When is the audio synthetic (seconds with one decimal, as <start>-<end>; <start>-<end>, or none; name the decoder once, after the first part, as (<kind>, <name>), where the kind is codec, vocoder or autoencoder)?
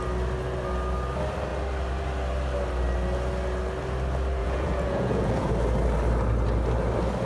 4.4-5.5 (vocoder, Vocos)